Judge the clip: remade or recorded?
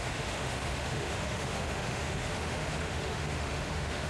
remade